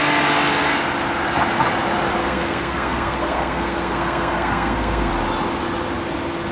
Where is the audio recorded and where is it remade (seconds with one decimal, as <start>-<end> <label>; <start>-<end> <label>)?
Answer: 0.0-2.2 recorded; 2.2-5.1 remade; 5.1-6.5 recorded